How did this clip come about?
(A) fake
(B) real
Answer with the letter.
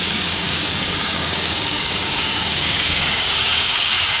A